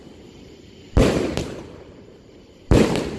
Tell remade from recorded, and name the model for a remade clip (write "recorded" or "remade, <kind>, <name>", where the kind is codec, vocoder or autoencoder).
remade, vocoder, BigVGAN v2